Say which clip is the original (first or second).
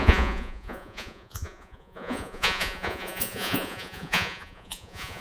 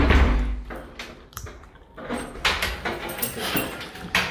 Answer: second